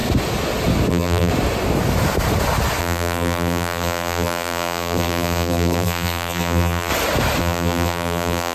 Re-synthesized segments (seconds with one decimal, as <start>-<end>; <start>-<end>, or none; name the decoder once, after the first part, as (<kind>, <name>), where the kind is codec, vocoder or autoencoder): 0.9-1.3 (vocoder, BigVGAN v2); 2.8-6.9; 7.4-8.5